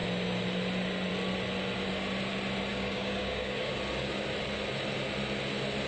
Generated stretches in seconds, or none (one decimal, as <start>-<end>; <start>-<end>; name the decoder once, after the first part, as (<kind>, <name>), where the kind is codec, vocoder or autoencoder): 2.7-3.7 (codec, DAC)